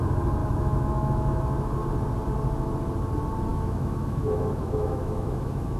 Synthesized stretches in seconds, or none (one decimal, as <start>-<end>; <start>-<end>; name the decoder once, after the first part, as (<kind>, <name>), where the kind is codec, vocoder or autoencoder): 0.4-1.4 (autoencoder, DAC-VAE); 3.5-5.8